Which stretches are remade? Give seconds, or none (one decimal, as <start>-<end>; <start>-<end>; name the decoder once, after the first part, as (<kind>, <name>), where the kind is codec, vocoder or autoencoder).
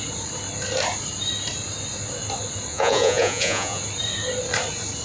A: 2.7-3.8 (vocoder, Vocos)